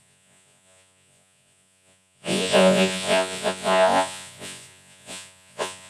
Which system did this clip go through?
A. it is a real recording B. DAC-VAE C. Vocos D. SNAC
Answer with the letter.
C